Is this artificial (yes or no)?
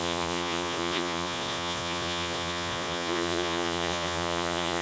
yes